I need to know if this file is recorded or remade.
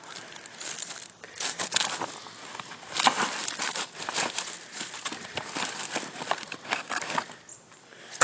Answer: recorded